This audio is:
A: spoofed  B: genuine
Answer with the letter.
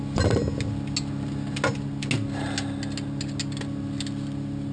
B